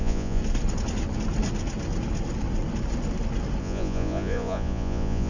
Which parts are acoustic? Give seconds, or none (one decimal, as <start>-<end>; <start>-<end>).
0.4-3.6